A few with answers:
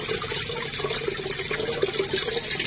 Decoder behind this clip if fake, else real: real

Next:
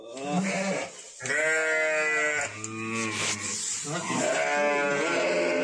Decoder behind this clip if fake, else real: real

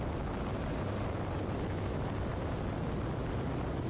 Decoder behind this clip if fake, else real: real